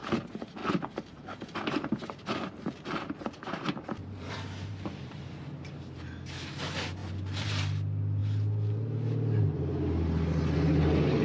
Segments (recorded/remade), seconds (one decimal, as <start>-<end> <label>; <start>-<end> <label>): 0.0-4.0 recorded; 4.0-5.2 remade; 5.2-7.0 recorded; 7.0-7.6 remade; 7.6-11.2 recorded